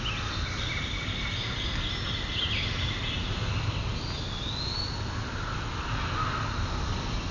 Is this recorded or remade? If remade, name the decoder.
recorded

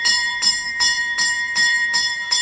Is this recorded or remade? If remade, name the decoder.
remade, vocoder, BigVGAN v2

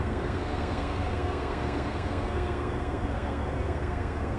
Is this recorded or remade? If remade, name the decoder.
remade, codec, SNAC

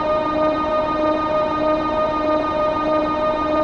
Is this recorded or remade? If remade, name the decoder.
remade, vocoder, BigVGAN v2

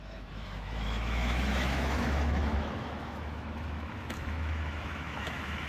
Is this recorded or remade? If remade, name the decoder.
remade, autoencoder, DAC-VAE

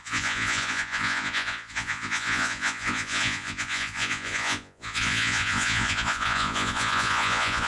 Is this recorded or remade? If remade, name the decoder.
remade, vocoder, Vocos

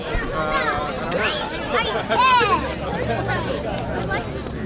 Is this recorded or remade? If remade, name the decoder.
recorded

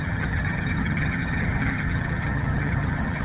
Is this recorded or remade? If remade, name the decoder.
remade, vocoder, HiFi-GAN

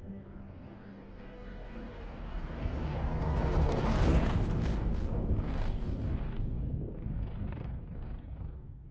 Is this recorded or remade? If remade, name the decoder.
remade, codec, DAC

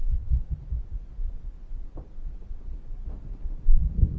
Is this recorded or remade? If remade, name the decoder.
recorded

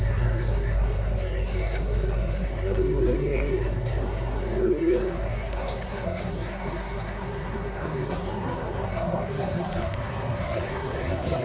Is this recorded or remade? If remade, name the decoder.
remade, codec, SNAC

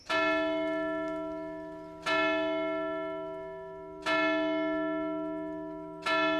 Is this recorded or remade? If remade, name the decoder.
recorded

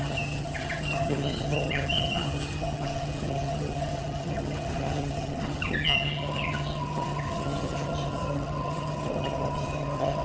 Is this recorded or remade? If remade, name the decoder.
remade, vocoder, HiFi-GAN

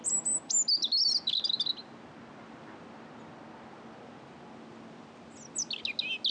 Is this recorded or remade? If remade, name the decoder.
recorded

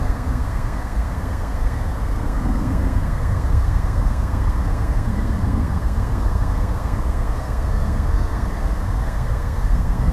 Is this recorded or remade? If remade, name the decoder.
remade, codec, SNAC